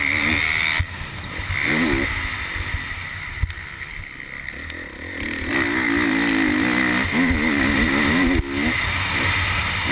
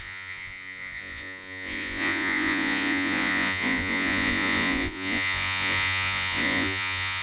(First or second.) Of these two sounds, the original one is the first